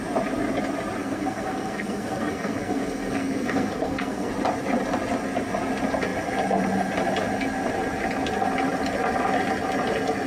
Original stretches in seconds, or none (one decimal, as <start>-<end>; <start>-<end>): 0.0-1.0; 4.3-10.3